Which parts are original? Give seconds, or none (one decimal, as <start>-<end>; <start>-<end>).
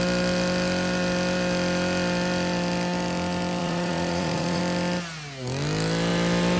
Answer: 0.0-3.6; 4.6-6.6